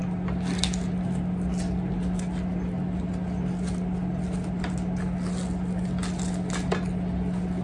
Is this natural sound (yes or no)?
yes